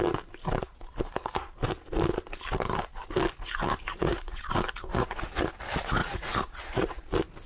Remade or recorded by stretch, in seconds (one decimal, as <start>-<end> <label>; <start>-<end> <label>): 0.0-3.8 recorded; 3.8-4.5 remade; 4.5-4.9 recorded; 4.9-5.5 remade; 5.5-6.0 recorded; 6.0-7.0 remade; 7.0-7.5 recorded